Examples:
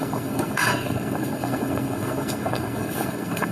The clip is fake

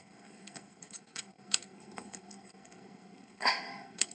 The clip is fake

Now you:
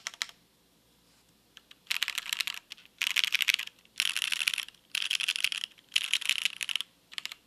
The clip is real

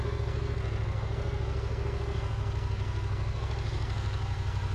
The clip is fake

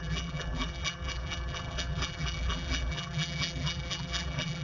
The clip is fake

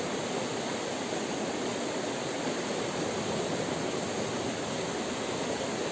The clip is real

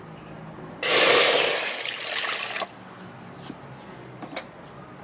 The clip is real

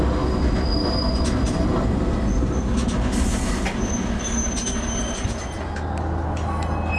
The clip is real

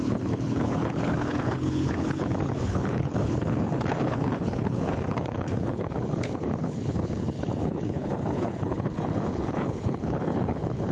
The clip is fake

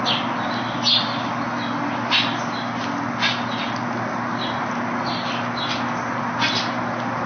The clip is real